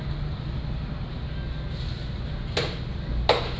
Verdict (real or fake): real